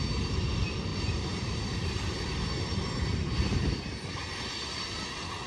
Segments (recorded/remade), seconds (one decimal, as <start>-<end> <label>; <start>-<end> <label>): 0.0-0.9 recorded; 0.9-4.2 remade; 4.2-5.5 recorded